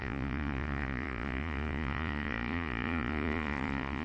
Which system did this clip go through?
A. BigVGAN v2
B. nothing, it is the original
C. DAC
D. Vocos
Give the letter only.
D